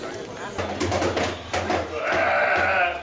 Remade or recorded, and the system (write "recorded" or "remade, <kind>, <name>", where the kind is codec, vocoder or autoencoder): recorded